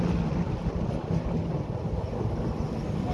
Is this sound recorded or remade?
recorded